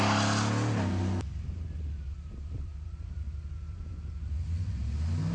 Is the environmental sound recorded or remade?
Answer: recorded